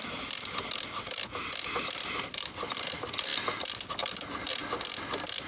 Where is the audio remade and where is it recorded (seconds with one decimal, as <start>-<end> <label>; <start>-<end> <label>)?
0.0-5.5 recorded